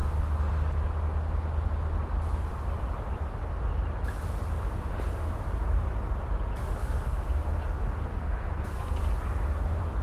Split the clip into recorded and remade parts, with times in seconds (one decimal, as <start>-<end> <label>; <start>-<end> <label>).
0.0-6.8 recorded; 6.8-9.1 remade; 9.1-10.0 recorded